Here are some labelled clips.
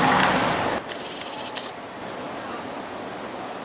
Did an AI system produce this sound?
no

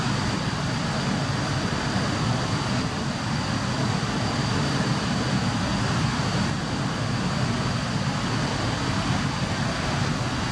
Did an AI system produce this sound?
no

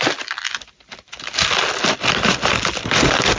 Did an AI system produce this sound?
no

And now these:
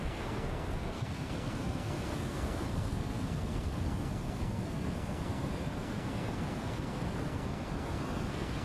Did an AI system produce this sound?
yes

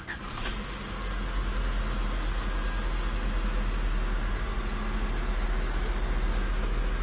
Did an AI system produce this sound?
no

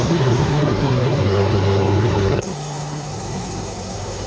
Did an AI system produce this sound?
yes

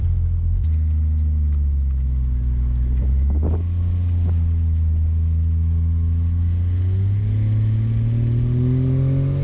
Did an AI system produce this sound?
no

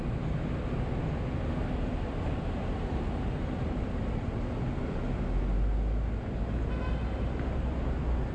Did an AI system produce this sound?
no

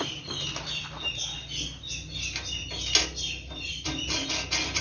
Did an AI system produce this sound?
no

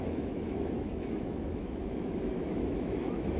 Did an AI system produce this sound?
yes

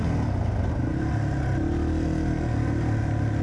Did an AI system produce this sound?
no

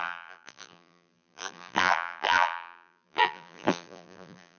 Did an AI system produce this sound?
yes